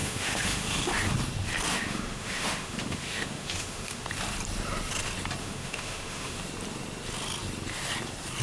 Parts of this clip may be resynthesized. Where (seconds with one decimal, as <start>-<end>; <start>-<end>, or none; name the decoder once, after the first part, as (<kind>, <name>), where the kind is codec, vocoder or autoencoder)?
0.0-0.9 (autoencoder, DAC-VAE); 1.7-4.1; 5.4-6.4